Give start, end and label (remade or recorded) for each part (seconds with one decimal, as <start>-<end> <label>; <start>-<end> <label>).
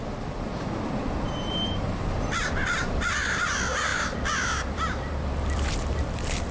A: 0.0-6.5 remade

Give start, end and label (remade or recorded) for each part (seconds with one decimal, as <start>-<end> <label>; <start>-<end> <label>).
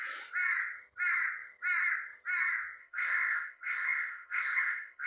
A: 0.0-2.8 recorded; 2.8-5.1 remade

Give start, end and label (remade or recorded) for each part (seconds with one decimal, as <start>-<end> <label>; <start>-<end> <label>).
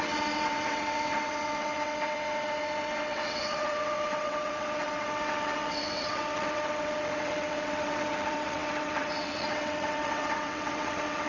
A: 0.0-11.3 remade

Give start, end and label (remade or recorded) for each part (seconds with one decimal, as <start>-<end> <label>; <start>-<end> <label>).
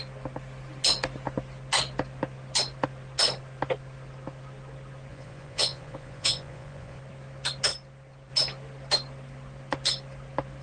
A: 0.0-5.1 recorded; 5.1-7.0 remade; 7.0-10.6 recorded